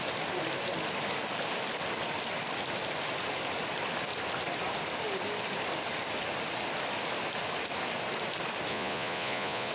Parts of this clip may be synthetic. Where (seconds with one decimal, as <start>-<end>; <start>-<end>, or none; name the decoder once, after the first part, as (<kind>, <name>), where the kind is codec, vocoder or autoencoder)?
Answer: 8.7-9.7 (vocoder, Vocos)